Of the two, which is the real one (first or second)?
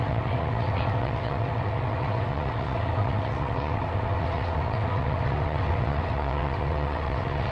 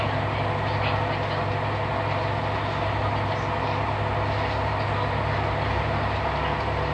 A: second